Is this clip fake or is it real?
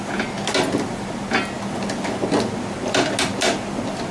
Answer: real